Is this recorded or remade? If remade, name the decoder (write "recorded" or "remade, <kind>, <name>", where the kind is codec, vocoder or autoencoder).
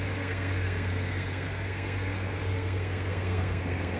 remade, codec, SNAC